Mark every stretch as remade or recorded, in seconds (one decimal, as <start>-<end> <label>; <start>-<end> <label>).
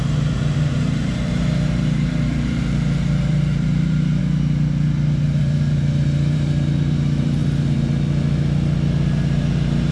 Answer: 0.0-4.2 remade; 4.2-5.4 recorded; 5.4-7.4 remade; 7.4-9.9 recorded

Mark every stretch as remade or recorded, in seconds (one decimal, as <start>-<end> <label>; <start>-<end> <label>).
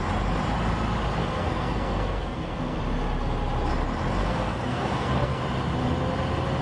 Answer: 0.0-1.2 recorded; 1.2-2.8 remade; 2.8-4.2 recorded; 4.2-5.4 remade; 5.4-6.6 recorded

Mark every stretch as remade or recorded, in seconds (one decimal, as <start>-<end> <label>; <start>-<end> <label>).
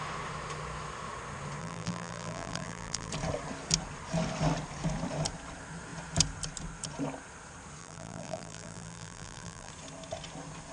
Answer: 0.0-1.6 recorded; 1.6-3.1 remade; 3.1-7.8 recorded; 7.8-9.7 remade; 9.7-10.7 recorded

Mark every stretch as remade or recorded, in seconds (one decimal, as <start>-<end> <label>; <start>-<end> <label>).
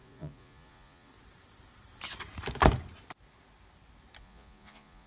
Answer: 0.0-1.1 remade; 1.1-4.2 recorded; 4.2-5.1 remade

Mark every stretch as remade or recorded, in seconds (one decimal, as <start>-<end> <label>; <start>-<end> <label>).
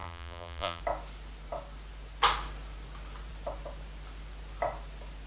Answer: 0.0-0.8 remade; 0.8-5.3 recorded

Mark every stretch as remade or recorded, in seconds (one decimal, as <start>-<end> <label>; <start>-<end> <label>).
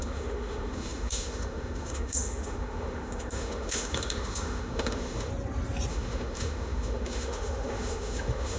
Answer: 0.0-5.3 remade; 5.3-5.9 recorded; 5.9-8.6 remade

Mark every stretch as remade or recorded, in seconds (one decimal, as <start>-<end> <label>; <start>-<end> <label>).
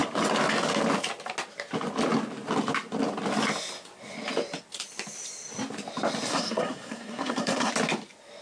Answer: 0.0-6.3 recorded; 6.3-7.7 remade; 7.7-8.4 recorded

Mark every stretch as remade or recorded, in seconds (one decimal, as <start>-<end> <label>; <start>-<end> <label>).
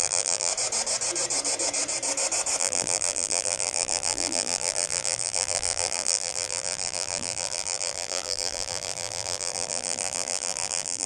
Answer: 0.0-0.5 remade; 0.5-2.6 recorded; 2.6-11.1 remade